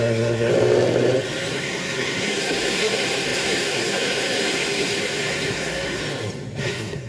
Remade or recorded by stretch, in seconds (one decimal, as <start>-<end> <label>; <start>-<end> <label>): 0.0-0.5 remade; 0.5-1.5 recorded; 1.5-6.0 remade; 6.0-6.6 recorded; 6.6-7.1 remade